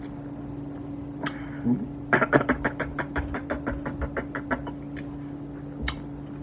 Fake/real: real